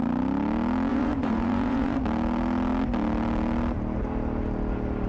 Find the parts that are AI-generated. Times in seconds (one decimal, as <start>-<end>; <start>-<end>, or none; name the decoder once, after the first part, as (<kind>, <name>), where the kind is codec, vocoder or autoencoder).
0.9-2.0 (vocoder, Vocos)